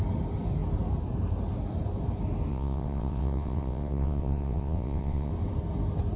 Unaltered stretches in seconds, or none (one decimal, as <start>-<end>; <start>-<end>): 0.0-2.5; 5.3-6.2